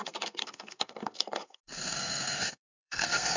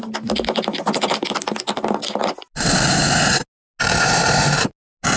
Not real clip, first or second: first